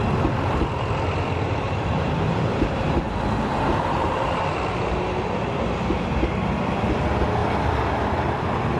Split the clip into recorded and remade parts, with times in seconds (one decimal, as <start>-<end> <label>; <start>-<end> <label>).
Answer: 0.0-1.6 recorded; 1.6-4.5 remade; 4.5-8.8 recorded

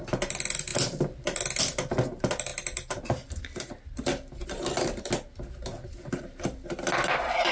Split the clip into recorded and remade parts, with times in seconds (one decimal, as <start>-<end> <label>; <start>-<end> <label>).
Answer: 0.0-7.5 recorded